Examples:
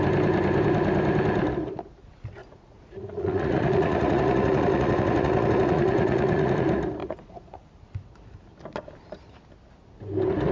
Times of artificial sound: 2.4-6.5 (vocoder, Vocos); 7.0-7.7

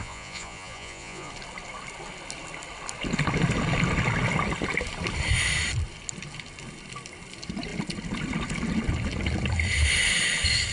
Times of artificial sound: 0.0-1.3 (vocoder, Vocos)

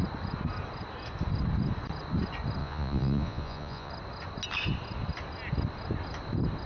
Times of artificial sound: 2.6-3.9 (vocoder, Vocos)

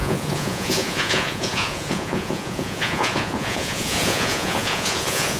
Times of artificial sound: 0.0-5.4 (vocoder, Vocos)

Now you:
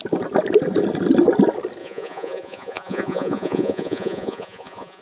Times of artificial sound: 1.8-5.0 (vocoder, Vocos)

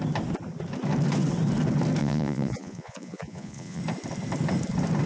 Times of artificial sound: 2.0-3.8 (vocoder, Vocos)

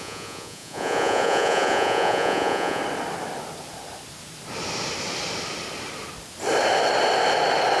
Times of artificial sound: 0.0-2.8 (vocoder, Vocos)